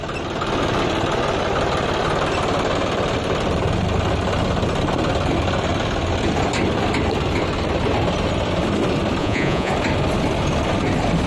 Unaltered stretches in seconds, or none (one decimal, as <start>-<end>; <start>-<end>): 0.0-9.2; 9.7-11.3